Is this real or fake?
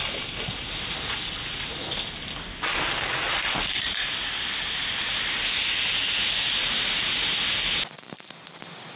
real